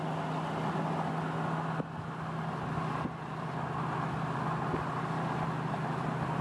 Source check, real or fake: real